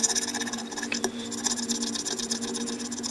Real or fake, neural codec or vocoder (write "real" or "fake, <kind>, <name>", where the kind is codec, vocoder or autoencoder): real